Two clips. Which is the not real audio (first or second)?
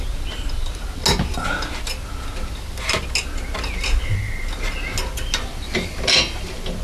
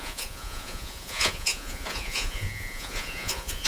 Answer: second